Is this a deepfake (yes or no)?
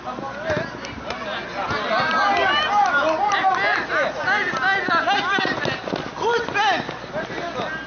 no